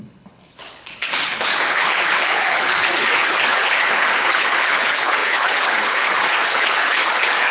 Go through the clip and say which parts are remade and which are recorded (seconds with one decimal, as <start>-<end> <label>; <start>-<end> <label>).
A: 0.0-7.5 remade